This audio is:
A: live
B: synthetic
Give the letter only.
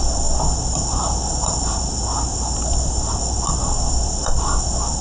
A